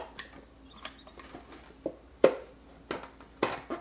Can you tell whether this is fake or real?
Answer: real